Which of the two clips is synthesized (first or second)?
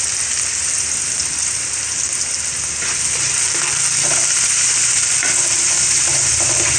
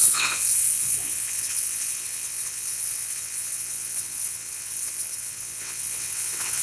second